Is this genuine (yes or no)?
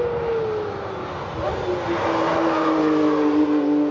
yes